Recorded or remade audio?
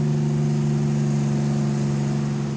recorded